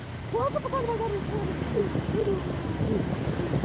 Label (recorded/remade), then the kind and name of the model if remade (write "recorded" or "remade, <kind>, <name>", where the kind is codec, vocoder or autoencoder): recorded